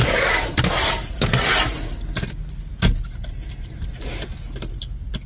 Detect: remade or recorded recorded